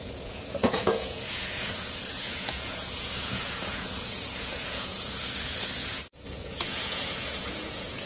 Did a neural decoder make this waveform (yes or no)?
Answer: yes